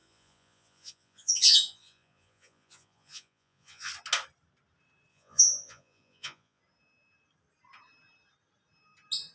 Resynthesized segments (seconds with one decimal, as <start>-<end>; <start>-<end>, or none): 0.0-3.9; 5.1-6.6

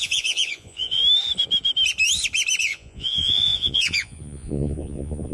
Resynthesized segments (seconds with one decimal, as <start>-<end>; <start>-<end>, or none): 0.0-1.0; 2.6-5.3